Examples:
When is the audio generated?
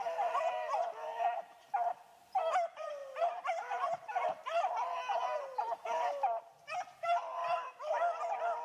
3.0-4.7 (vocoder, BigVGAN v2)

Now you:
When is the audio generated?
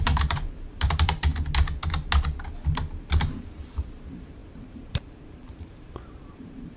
0.0-1.3 (vocoder, BigVGAN v2); 2.9-6.8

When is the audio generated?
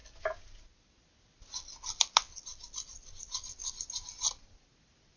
3.6-4.6 (vocoder, BigVGAN v2)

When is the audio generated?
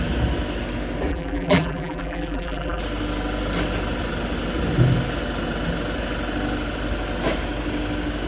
1.1-2.8 (vocoder, BigVGAN v2)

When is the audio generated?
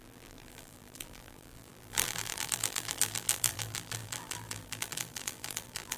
0.0-6.0 (vocoder, BigVGAN v2)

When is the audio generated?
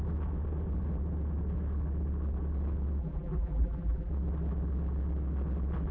3.0-4.1 (vocoder, BigVGAN v2)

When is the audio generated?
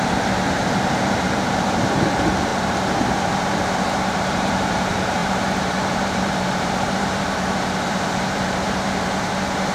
0.0-9.7 (vocoder, BigVGAN v2)